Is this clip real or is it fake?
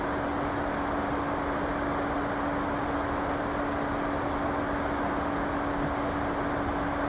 real